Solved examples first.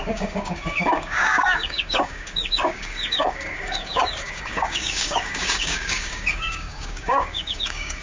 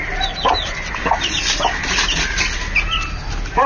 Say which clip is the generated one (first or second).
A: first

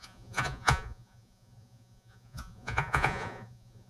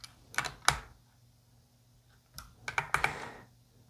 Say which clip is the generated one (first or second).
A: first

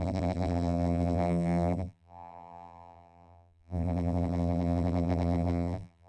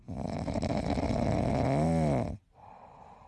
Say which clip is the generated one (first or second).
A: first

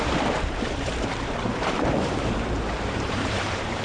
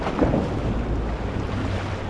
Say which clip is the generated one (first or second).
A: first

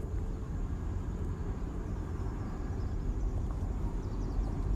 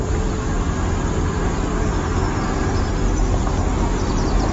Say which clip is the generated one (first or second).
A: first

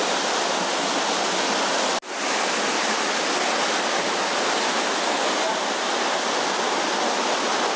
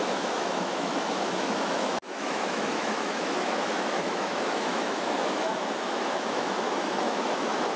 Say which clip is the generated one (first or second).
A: second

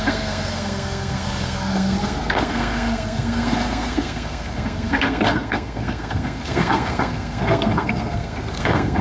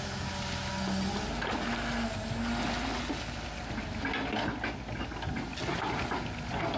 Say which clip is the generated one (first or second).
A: first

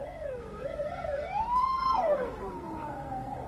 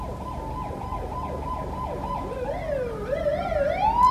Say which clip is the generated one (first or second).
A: first